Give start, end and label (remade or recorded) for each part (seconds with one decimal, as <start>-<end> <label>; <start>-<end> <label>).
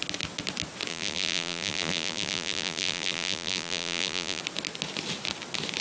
0.0-0.9 recorded; 0.9-4.4 remade; 4.4-5.8 recorded